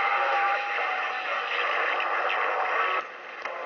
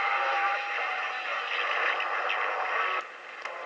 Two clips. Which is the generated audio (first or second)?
first